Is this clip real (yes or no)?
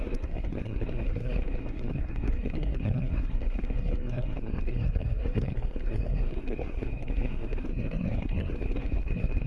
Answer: no